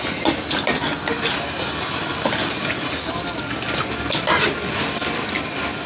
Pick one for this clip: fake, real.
real